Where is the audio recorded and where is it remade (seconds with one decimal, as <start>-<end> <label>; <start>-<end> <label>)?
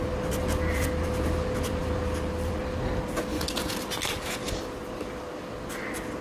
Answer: 0.0-6.2 recorded